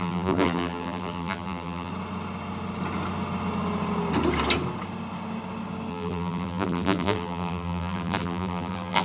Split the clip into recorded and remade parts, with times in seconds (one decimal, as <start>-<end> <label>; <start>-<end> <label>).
0.0-1.9 remade; 1.9-5.9 recorded; 5.9-9.0 remade